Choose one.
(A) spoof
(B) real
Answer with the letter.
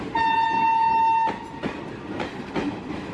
B